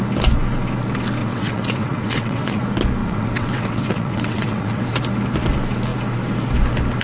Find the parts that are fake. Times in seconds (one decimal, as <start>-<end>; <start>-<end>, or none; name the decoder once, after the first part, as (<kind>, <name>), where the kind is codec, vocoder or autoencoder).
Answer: 1.2-2.6 (vocoder, WaveNeXt); 3.0-4.9